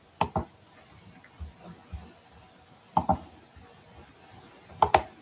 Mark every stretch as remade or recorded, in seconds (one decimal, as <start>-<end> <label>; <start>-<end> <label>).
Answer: 0.0-5.2 recorded